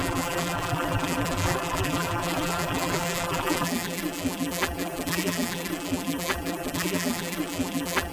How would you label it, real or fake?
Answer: fake